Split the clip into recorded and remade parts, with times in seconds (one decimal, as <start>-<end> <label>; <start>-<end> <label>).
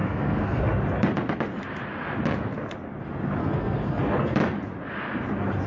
0.0-0.6 remade; 0.6-3.4 recorded; 3.4-4.0 remade; 4.0-5.7 recorded